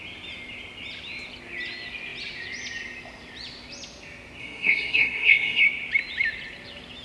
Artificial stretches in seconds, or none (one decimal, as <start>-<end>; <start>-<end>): 4.4-5.6